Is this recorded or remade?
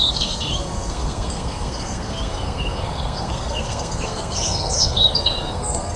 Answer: remade